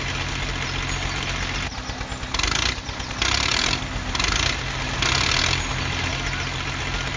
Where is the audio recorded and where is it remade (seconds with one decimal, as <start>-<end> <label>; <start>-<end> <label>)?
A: 0.0-7.2 recorded